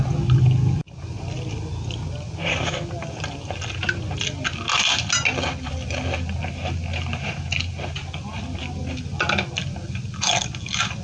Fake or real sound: real